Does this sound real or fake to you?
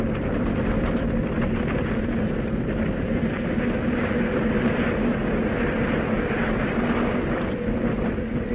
real